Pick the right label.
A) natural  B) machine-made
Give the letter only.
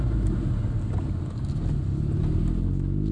A